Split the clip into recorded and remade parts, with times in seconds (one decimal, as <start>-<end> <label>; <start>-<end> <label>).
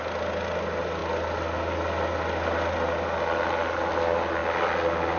0.0-5.2 recorded